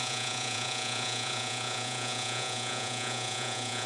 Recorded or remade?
remade